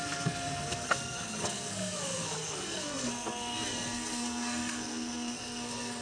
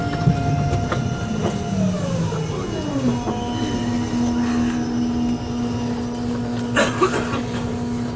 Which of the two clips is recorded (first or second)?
second